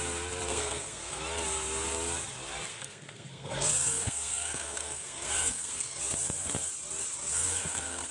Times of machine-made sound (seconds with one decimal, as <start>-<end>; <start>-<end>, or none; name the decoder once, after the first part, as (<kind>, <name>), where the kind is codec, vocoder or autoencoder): 0.5-1.2 (codec, SNAC); 2.7-6.0; 7.2-8.1